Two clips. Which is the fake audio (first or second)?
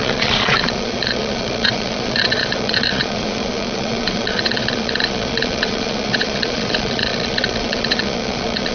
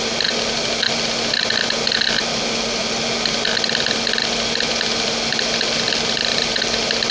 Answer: first